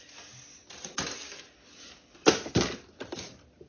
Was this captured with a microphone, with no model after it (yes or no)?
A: yes